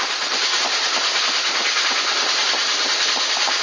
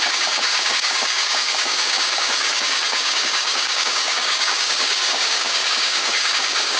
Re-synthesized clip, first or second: second